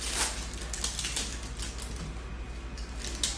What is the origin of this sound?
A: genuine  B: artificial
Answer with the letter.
A